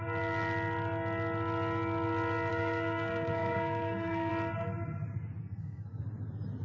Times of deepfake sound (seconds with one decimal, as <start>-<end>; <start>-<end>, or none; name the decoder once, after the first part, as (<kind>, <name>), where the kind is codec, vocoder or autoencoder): 2.5-4.3 (codec, SNAC); 5.4-6.0

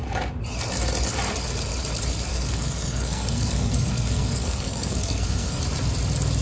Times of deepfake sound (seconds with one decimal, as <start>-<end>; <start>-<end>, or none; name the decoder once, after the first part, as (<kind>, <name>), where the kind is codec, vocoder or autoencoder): 2.3-5.6 (codec, SNAC)

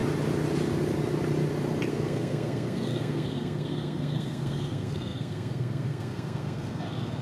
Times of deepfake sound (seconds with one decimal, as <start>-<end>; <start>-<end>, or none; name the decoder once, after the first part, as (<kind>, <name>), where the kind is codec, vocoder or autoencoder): 1.9-7.2 (codec, SNAC)

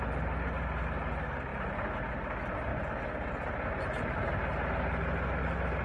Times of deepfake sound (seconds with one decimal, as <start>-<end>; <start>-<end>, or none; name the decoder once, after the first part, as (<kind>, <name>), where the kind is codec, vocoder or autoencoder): none

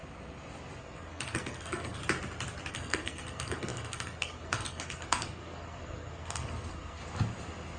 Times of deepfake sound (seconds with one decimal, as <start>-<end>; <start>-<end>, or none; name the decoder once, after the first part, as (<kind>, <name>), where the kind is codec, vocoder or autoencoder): 0.8-2.0 (codec, SNAC); 2.7-7.0

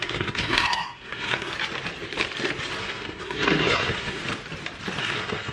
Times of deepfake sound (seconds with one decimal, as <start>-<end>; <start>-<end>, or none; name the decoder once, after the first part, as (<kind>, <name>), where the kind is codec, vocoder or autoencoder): 0.0-1.5 (codec, SNAC); 2.8-4.2; 5.0-5.5